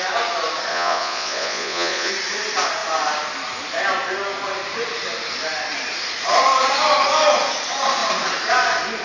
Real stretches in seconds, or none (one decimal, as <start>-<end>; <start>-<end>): 0.0-0.7; 2.1-9.0